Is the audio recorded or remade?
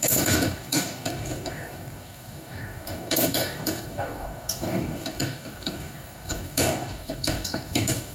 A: remade